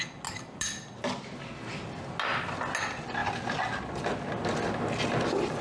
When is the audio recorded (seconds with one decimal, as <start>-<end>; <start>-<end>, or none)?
0.0-5.6